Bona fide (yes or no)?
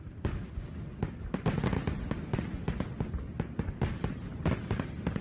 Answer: yes